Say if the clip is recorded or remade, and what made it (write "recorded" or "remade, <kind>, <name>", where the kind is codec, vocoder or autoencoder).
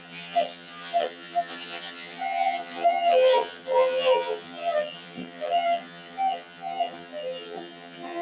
remade, vocoder, HiFi-GAN